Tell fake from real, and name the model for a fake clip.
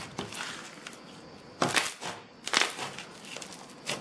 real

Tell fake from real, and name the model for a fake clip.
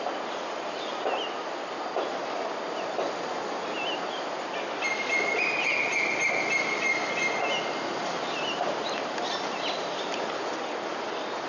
real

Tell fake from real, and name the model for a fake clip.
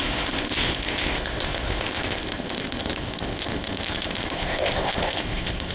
fake, codec, ZipCodec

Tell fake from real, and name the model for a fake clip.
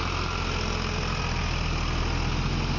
real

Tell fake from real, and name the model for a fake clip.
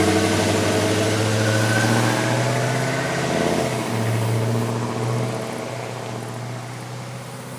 real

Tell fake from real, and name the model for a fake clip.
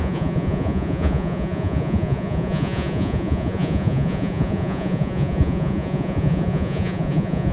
fake, vocoder, Vocos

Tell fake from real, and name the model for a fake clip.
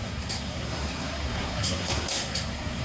fake, codec, SNAC